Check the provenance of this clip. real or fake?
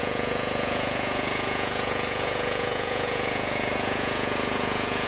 fake